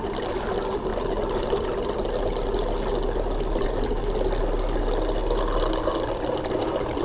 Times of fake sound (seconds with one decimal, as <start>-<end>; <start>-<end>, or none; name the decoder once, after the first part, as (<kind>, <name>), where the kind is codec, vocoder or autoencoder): none